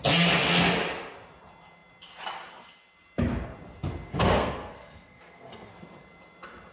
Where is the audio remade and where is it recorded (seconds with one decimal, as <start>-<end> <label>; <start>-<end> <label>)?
0.0-4.1 recorded; 4.1-5.7 remade; 5.7-6.7 recorded